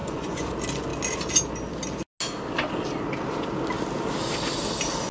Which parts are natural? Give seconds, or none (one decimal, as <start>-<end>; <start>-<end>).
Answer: 0.5-5.1